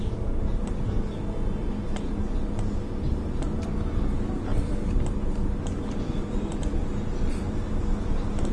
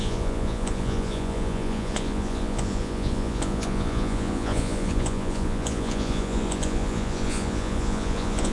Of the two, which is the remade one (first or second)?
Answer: second